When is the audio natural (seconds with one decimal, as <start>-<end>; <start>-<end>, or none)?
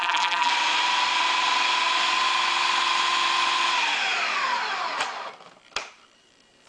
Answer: 0.5-6.7